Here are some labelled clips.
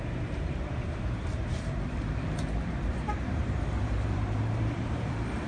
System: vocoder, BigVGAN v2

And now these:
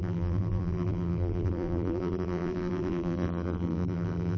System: vocoder, BigVGAN v2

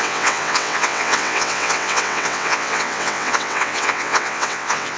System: vocoder, WaveNeXt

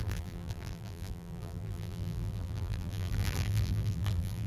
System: vocoder, BigVGAN v2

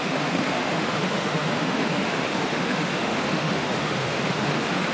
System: autoencoder, DAC-VAE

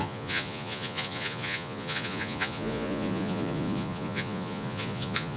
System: vocoder, Vocos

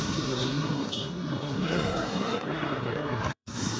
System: codec, SNAC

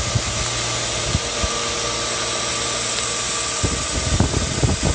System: none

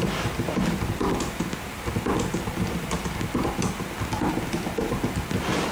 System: none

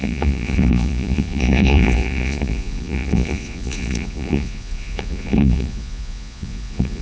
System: vocoder, Vocos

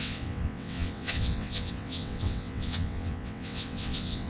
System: vocoder, WaveNeXt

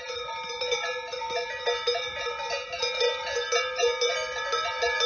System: none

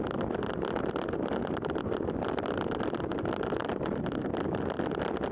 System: none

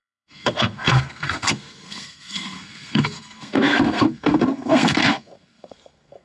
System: codec, SNAC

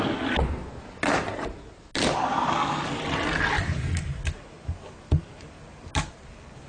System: none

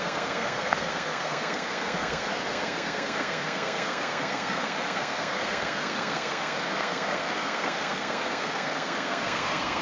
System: codec, SNAC